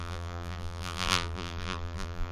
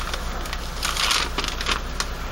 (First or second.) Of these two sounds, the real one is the second